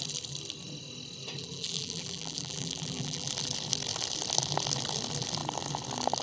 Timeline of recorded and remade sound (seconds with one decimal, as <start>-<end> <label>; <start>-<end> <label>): 0.0-1.4 recorded; 1.4-3.3 remade; 3.3-6.2 recorded